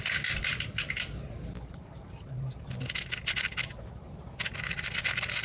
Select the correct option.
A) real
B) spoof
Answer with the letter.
A